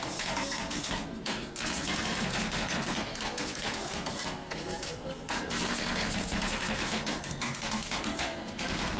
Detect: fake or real fake